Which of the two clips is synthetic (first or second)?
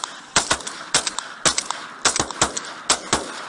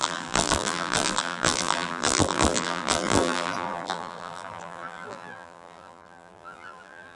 second